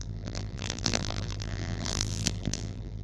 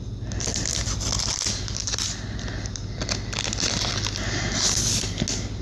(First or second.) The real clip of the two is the second